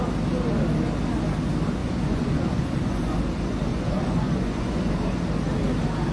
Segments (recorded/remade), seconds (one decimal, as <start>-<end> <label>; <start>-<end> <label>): 0.0-1.8 recorded; 1.8-3.2 remade; 3.2-3.7 recorded; 3.7-5.2 remade; 5.2-6.1 recorded

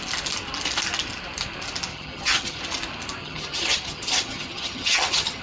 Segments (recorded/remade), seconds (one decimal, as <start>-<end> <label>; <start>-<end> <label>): 0.0-1.9 recorded; 1.9-2.6 remade; 2.6-3.2 recorded; 3.2-5.4 remade

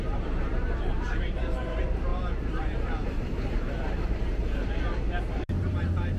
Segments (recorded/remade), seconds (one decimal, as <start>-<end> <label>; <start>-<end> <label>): 0.0-6.2 remade

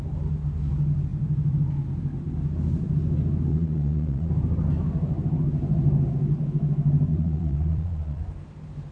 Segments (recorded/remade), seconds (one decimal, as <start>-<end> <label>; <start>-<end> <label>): 0.0-3.5 recorded; 3.5-4.3 remade; 4.3-7.1 recorded; 7.1-8.2 remade; 8.2-8.9 recorded

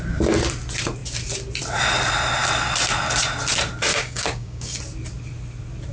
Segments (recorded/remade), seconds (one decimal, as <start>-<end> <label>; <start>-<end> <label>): 0.0-3.9 recorded; 3.9-4.8 remade; 4.8-5.9 recorded

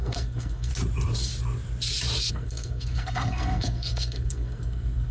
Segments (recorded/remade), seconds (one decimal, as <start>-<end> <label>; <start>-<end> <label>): 0.0-0.7 remade; 0.7-2.3 recorded; 2.3-5.1 remade

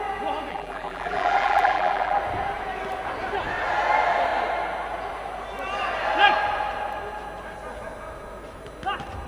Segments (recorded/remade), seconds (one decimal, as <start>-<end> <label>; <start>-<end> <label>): 0.0-0.5 recorded; 0.5-2.2 remade; 2.2-9.3 recorded

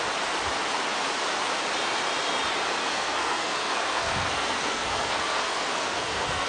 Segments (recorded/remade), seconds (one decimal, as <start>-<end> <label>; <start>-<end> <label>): 0.0-2.8 recorded; 2.8-6.5 remade